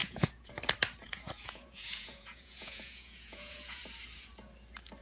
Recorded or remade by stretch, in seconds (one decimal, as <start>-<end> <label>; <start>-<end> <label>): 0.0-0.5 remade; 0.5-1.0 recorded; 1.0-3.8 remade; 3.8-5.0 recorded